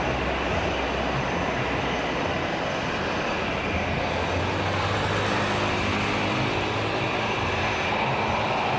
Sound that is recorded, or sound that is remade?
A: recorded